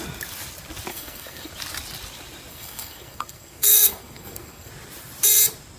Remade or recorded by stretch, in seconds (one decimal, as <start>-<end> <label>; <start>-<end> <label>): 0.0-0.9 recorded; 0.9-1.5 remade; 1.5-2.5 recorded; 2.5-4.7 remade; 4.7-5.8 recorded

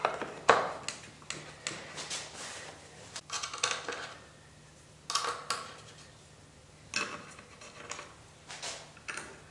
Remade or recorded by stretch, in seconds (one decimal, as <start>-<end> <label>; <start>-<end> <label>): 0.0-9.5 recorded

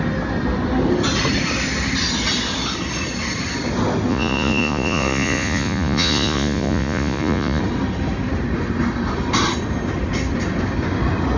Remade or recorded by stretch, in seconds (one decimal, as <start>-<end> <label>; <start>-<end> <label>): 0.0-4.1 recorded; 4.1-7.6 remade; 7.6-11.4 recorded